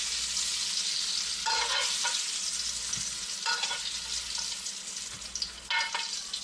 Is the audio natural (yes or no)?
yes